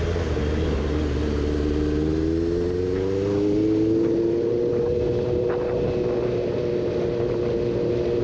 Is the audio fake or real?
real